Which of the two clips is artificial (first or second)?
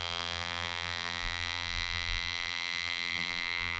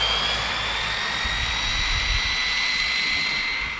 first